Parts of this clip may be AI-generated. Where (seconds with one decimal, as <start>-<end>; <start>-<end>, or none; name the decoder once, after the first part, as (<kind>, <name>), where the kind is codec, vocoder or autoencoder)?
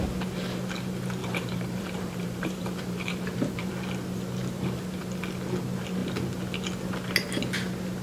1.2-3.7 (vocoder, BigVGAN v2)